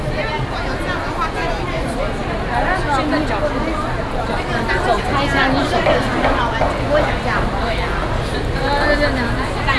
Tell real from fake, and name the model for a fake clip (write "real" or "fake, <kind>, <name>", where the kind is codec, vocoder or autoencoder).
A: real